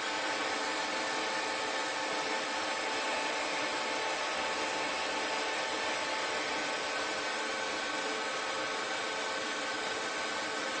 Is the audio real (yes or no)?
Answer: yes